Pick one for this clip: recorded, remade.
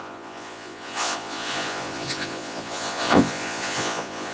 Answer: remade